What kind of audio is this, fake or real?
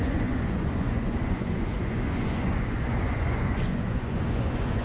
fake